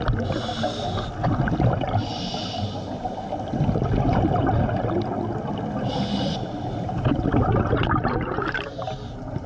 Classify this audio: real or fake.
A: real